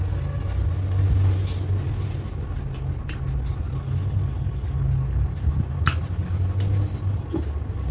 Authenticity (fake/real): real